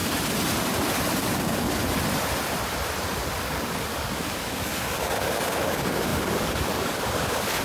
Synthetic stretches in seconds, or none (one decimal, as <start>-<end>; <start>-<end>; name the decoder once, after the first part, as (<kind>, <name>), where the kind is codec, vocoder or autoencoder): 1.2-1.8 (codec, DAC); 3.4-7.6